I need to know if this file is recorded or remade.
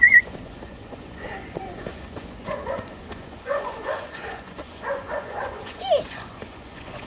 remade